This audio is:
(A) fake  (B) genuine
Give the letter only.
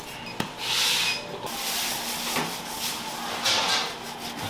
B